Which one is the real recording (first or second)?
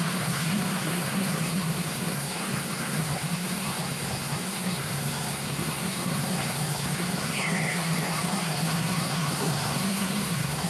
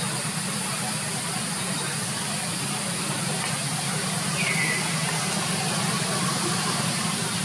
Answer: second